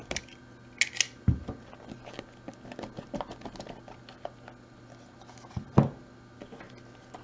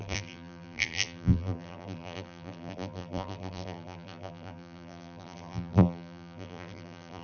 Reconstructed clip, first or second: second